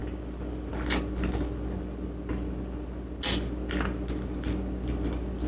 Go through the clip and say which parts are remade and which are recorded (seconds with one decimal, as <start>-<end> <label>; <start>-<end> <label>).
0.0-0.7 remade; 0.7-5.5 recorded